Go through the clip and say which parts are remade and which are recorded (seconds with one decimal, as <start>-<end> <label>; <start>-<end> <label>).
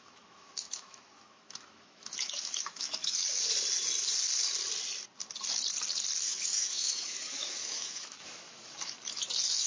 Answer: 0.0-3.2 remade; 3.2-6.2 recorded; 6.2-9.7 remade